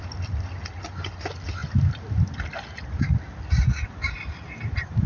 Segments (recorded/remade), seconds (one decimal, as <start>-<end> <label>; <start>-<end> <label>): 0.0-5.1 recorded